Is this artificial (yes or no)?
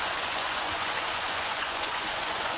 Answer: yes